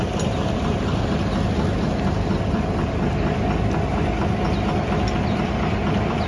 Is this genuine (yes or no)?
yes